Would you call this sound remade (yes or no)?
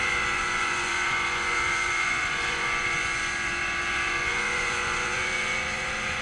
yes